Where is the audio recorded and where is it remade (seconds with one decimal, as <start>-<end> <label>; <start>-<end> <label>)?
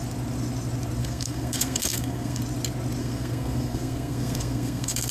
0.0-1.0 recorded; 1.0-2.4 remade; 2.4-3.0 recorded; 3.0-5.1 remade